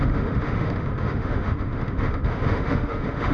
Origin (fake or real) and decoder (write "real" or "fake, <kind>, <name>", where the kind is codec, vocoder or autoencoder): fake, autoencoder, DAC-VAE